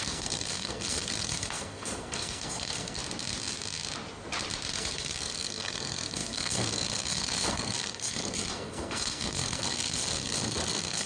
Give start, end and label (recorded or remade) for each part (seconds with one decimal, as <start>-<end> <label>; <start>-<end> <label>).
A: 0.0-3.0 remade; 3.0-4.7 recorded; 4.7-11.1 remade